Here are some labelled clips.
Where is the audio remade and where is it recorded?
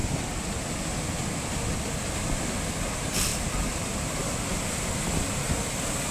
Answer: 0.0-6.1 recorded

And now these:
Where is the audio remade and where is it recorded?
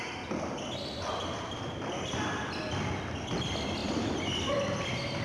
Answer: 0.0-5.2 recorded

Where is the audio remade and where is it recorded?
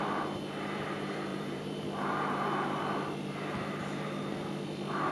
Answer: 0.0-1.3 recorded; 1.3-1.8 remade; 1.8-5.1 recorded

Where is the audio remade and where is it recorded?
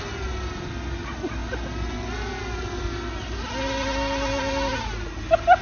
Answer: 0.0-5.6 recorded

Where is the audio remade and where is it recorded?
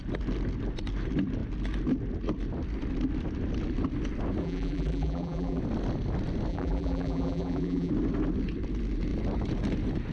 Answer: 0.0-4.4 recorded; 4.4-5.6 remade; 5.6-6.5 recorded; 6.5-7.9 remade; 7.9-10.1 recorded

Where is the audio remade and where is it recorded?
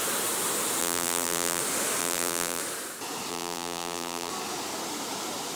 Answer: 0.0-0.8 recorded; 0.8-1.6 remade; 1.6-2.0 recorded; 2.0-2.6 remade; 2.6-3.3 recorded; 3.3-4.3 remade; 4.3-5.5 recorded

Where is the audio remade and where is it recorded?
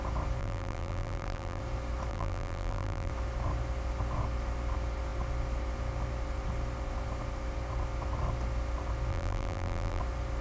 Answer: 0.0-0.4 recorded; 0.4-1.6 remade; 1.6-2.1 recorded; 2.1-3.1 remade; 3.1-9.1 recorded; 9.1-10.0 remade; 10.0-10.4 recorded